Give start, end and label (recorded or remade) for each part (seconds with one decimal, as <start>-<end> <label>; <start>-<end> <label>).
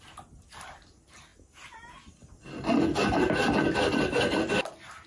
0.0-5.1 recorded